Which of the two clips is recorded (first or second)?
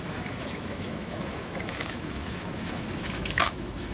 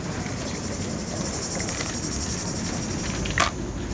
second